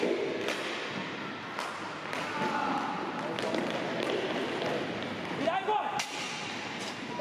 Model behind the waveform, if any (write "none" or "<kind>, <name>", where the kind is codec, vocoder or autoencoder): none